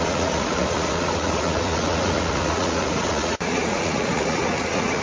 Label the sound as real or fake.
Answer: fake